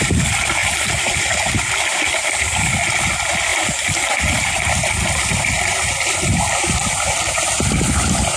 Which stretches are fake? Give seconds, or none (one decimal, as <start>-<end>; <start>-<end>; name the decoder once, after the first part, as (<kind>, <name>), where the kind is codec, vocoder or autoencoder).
0.6-1.6 (vocoder, BigVGAN v2); 3.5-4.2